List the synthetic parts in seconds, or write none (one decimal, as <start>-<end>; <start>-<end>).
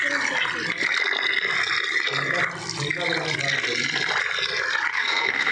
4.9-5.5